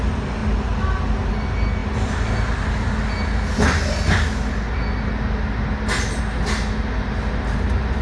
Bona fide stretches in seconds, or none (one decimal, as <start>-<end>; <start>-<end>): 0.0-8.0